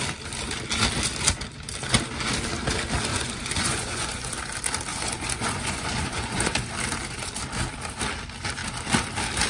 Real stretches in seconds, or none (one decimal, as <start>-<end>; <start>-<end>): 0.0-3.1; 4.3-4.9; 6.7-9.5